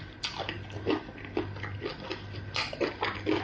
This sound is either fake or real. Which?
real